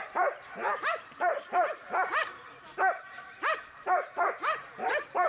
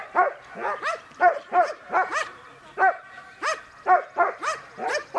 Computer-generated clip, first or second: first